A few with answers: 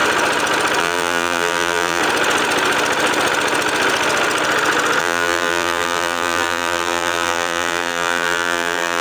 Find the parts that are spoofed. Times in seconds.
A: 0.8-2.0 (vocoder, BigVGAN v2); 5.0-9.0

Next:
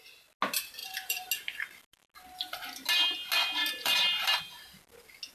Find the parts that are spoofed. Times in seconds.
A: 0.8-1.3 (vocoder, BigVGAN v2); 3.6-4.4

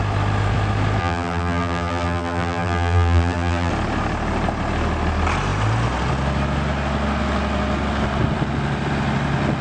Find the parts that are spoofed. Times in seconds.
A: 1.0-3.7 (vocoder, BigVGAN v2)

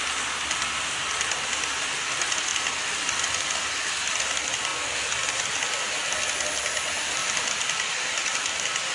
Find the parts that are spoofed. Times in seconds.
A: 7.2-8.5 (vocoder, BigVGAN v2)